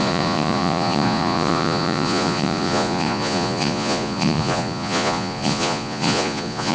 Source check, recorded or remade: remade